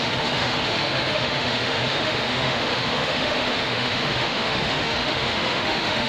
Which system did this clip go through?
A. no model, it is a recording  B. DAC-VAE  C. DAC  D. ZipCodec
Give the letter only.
B